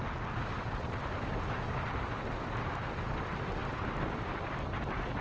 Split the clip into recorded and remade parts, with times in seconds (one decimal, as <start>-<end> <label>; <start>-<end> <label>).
0.0-5.2 recorded